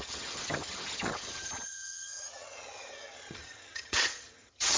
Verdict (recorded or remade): remade